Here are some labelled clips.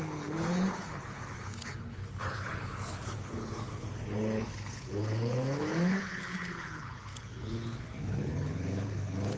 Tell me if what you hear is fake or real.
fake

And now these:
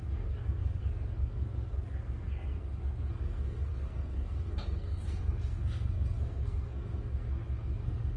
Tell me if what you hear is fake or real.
fake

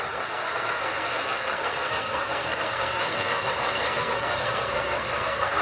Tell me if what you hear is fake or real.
fake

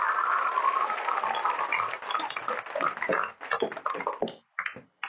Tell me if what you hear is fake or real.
real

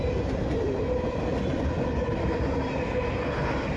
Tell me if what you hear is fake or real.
real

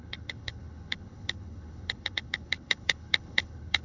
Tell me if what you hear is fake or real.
fake